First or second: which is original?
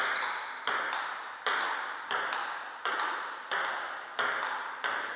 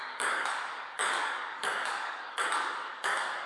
first